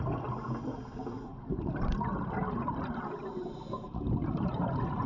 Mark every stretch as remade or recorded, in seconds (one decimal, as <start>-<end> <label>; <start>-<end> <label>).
0.0-5.1 recorded